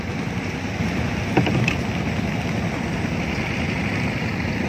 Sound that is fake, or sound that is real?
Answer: real